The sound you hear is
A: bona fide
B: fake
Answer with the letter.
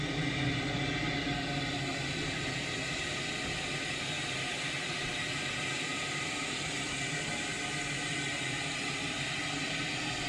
A